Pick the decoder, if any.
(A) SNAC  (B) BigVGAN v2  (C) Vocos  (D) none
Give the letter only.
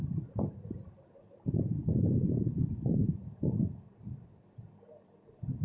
B